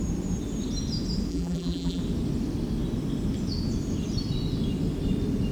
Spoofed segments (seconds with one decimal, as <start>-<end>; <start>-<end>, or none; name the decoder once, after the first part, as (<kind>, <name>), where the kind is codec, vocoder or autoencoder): 1.3-2.0 (vocoder, BigVGAN v2)